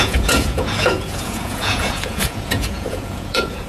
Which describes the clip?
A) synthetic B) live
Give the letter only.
A